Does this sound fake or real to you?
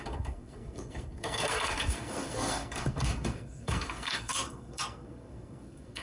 fake